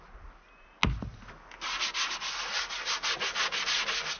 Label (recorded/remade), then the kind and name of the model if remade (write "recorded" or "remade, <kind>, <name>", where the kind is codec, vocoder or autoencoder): recorded